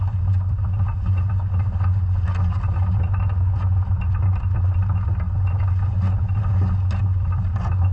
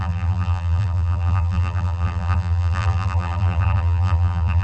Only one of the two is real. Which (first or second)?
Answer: first